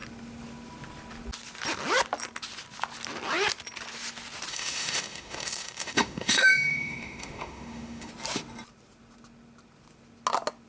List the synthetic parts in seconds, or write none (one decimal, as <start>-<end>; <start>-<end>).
4.5-8.1